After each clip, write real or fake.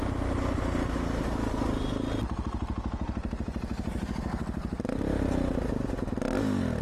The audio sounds real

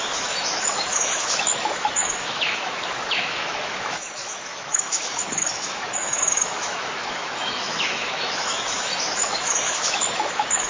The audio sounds fake